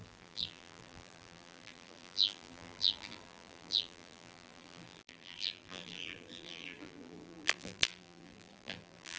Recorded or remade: remade